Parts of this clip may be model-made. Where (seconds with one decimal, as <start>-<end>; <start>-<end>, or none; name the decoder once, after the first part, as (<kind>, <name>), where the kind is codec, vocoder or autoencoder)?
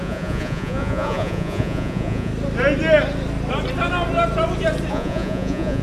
0.0-2.3 (vocoder, Vocos); 4.9-5.8